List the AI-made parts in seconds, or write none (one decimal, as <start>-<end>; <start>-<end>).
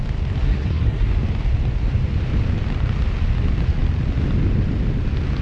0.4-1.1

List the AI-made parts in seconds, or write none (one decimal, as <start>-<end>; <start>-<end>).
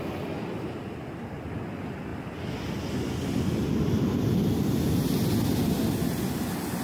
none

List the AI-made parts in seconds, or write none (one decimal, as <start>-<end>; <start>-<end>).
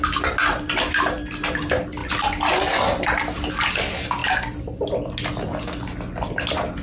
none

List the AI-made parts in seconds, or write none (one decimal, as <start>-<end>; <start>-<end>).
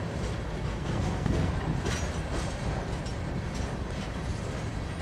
0.7-1.5